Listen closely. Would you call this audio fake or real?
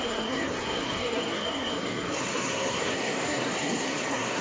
fake